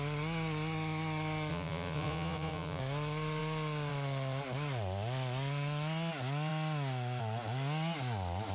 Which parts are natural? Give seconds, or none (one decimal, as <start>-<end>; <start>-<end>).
0.0-1.5; 2.8-8.5